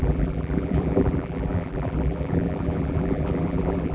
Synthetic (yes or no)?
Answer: yes